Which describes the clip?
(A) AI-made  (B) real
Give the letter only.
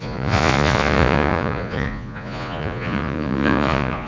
A